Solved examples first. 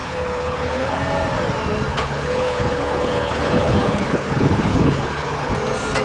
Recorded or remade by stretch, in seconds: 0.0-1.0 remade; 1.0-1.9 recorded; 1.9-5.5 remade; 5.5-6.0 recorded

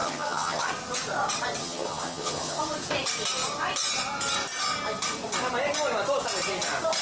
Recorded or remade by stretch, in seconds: 0.0-0.7 remade; 0.7-1.6 recorded; 1.6-2.6 remade; 2.6-7.0 recorded

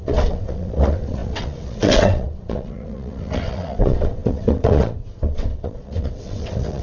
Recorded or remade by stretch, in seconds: 0.0-6.8 remade

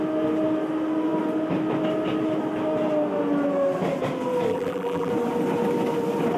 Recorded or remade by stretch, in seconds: 0.0-4.5 recorded; 4.5-5.1 remade; 5.1-6.4 recorded

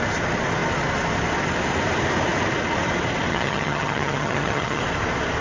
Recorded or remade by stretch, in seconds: 0.0-3.3 recorded; 3.3-4.8 remade; 4.8-5.4 recorded